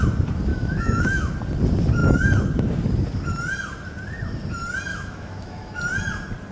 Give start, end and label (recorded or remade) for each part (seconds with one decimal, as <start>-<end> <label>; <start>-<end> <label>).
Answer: 0.0-0.5 recorded; 0.5-1.3 remade; 1.3-4.9 recorded; 4.9-5.8 remade; 5.8-6.5 recorded